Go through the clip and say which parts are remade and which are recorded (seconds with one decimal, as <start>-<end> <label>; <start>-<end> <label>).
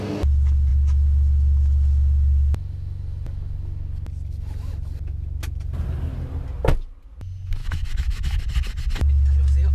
0.0-7.6 recorded; 7.6-8.4 remade; 8.4-9.7 recorded